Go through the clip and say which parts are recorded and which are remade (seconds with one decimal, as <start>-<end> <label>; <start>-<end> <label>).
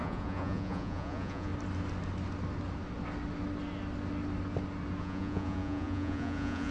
0.0-1.5 remade; 1.5-5.0 recorded; 5.0-6.7 remade